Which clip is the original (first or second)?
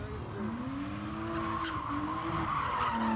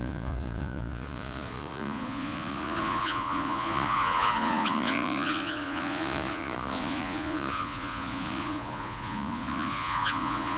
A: first